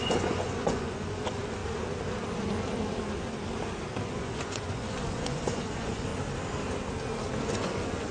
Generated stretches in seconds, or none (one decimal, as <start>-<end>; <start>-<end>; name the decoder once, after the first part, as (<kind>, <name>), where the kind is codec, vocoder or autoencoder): 0.0-1.6 (vocoder, Vocos); 4.0-6.1; 7.4-8.1